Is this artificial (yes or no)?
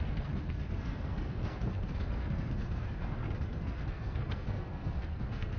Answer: yes